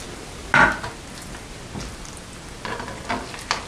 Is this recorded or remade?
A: recorded